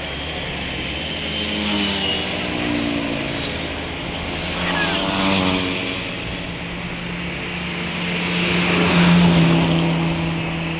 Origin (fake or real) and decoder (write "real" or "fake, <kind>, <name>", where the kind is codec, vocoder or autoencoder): real